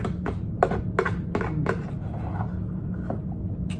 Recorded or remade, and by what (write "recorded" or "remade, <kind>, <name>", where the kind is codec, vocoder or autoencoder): recorded